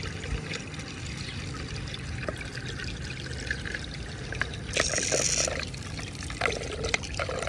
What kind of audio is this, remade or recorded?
recorded